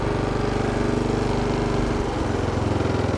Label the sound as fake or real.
real